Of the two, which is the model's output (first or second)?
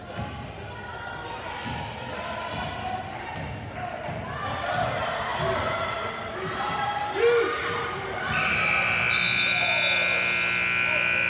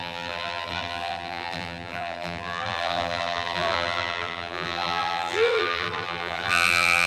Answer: second